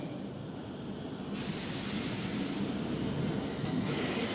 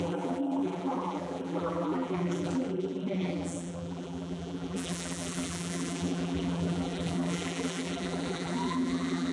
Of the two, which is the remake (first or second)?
second